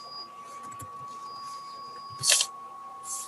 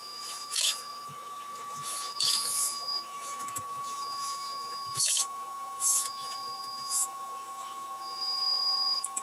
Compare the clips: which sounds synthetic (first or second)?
second